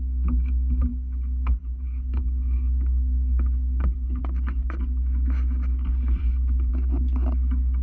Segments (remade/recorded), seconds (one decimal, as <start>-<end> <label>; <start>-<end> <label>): 0.0-0.9 recorded; 0.9-4.2 remade; 4.2-6.2 recorded; 6.2-6.7 remade; 6.7-7.8 recorded